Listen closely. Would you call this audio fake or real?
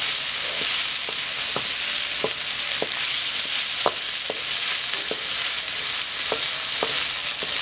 real